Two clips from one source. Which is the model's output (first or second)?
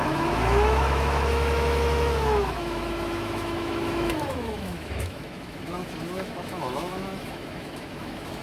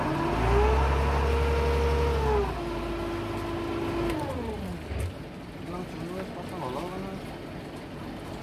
first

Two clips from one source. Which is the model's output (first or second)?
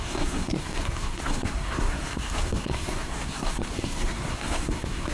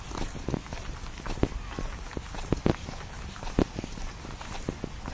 first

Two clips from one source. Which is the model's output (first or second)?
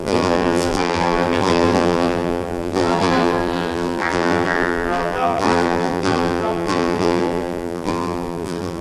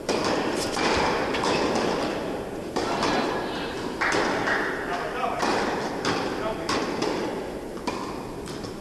first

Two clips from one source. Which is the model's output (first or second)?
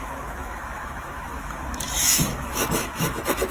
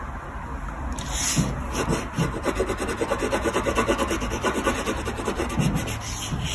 first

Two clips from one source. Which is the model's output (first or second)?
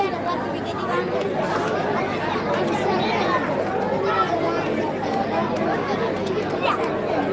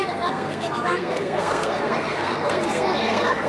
second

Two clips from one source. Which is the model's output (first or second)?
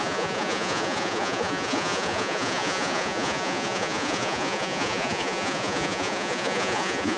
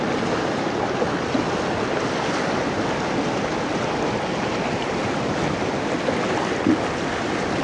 first